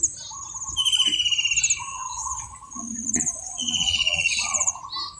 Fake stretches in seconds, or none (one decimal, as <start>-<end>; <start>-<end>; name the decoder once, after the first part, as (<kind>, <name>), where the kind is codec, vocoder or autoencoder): 1.9-4.8 (vocoder, Vocos)